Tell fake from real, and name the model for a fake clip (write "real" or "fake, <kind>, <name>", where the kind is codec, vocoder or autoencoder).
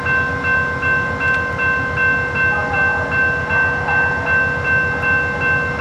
real